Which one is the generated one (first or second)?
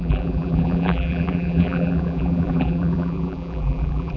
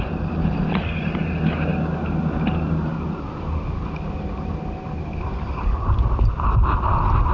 first